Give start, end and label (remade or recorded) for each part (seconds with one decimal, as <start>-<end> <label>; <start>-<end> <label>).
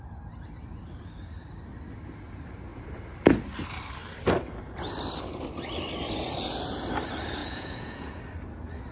0.0-7.4 recorded; 7.4-8.2 remade; 8.2-8.9 recorded